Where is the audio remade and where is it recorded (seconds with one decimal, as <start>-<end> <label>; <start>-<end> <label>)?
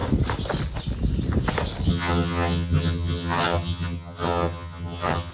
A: 0.0-1.9 recorded; 1.9-5.3 remade